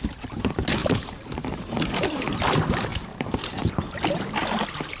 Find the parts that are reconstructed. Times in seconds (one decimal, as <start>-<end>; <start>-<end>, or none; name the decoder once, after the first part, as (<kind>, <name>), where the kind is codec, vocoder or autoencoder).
0.8-2.2 (vocoder, BigVGAN v2); 2.9-3.8